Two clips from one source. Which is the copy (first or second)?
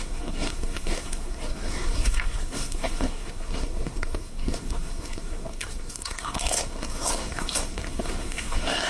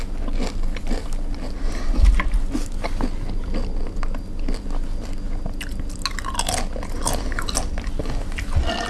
first